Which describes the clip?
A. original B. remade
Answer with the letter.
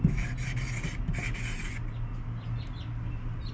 A